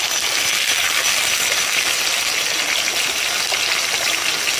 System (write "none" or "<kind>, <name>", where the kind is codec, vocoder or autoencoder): none